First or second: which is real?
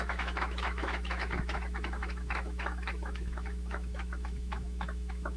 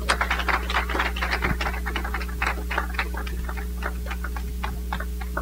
second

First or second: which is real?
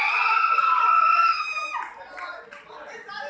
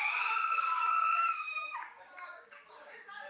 first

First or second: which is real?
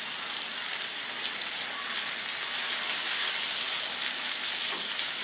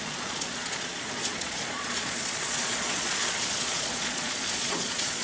first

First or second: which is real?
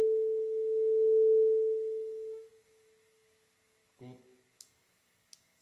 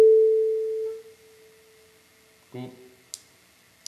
second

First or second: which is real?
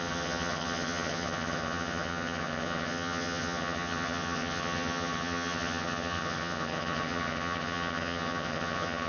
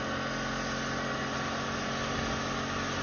second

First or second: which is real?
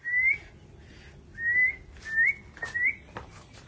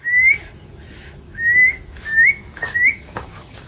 first